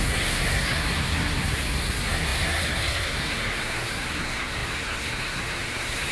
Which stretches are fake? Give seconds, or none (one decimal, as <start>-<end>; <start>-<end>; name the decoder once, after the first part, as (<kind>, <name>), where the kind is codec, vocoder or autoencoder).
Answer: 0.0-6.1 (codec, SNAC)